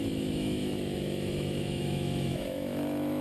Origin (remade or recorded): remade